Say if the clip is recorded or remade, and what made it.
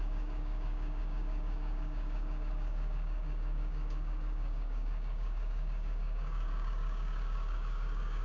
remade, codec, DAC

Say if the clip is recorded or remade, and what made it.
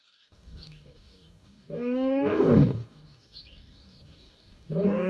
remade, codec, DAC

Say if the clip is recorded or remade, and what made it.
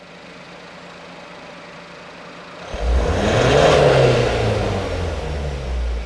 recorded